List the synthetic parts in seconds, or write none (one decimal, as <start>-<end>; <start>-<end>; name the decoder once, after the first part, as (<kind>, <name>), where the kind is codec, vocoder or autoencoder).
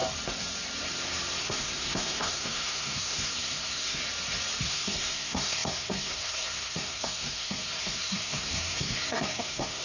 1.4-4.0 (codec, SNAC); 4.6-9.8